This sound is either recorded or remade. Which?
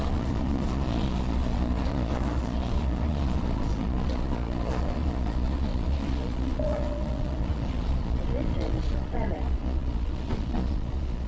remade